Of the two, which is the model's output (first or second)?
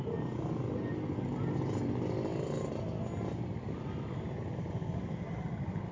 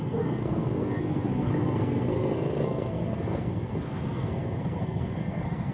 second